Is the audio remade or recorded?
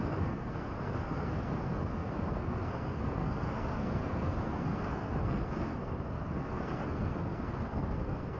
remade